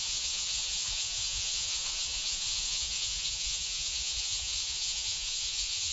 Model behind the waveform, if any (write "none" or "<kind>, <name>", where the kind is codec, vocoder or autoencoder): vocoder, Vocos